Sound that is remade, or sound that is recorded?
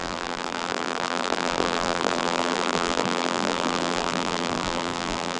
remade